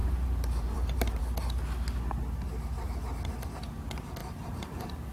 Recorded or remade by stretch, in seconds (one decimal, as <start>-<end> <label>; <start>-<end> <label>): 0.0-1.2 remade; 1.2-4.2 recorded; 4.2-5.1 remade